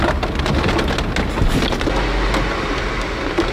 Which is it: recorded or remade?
recorded